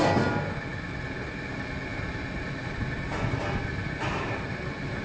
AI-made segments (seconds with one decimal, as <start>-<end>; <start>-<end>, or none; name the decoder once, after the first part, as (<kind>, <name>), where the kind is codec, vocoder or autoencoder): none